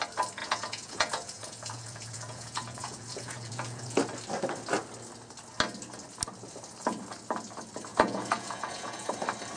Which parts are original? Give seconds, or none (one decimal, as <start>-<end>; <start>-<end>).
0.0-0.4; 4.0-7.9; 9.1-9.6